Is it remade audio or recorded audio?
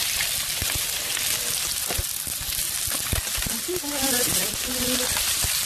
recorded